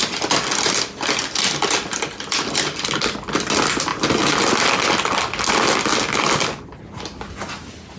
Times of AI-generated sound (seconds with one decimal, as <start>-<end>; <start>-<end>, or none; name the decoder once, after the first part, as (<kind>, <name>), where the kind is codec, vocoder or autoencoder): none